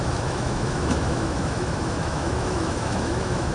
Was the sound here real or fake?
fake